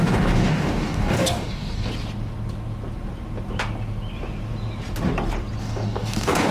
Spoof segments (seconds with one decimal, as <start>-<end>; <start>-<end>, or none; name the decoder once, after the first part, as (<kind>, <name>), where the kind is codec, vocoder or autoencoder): 0.0-1.9 (codec, DAC); 5.6-6.5